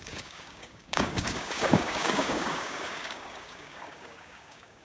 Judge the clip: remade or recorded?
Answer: remade